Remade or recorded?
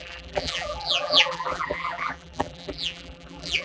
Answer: remade